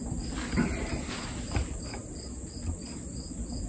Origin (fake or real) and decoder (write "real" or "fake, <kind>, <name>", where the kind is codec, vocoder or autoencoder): real